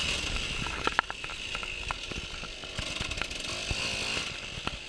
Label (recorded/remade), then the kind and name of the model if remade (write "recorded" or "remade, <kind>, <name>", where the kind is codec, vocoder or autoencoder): recorded